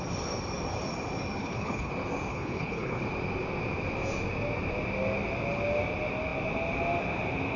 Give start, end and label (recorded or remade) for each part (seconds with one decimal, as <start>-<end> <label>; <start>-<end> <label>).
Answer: 0.0-1.4 recorded; 1.4-1.9 remade; 1.9-2.3 recorded; 2.3-3.0 remade; 3.0-7.6 recorded